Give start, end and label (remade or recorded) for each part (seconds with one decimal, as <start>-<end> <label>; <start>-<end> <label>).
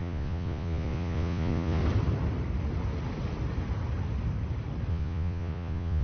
0.0-1.8 remade; 1.8-4.9 recorded; 4.9-6.0 remade